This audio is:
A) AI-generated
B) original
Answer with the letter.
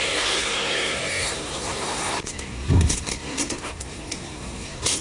A